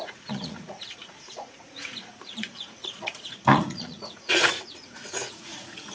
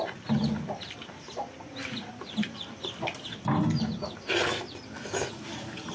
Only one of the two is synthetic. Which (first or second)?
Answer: first